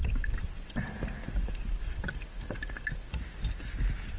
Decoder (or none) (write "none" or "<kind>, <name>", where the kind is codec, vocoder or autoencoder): none